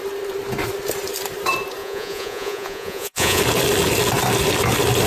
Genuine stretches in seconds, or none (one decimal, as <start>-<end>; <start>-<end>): 0.0-1.8; 3.4-5.1